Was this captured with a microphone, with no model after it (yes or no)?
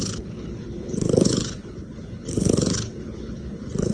no